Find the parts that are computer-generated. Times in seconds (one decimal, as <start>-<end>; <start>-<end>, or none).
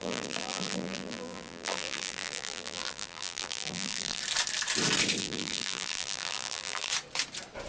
0.0-4.2; 5.2-6.9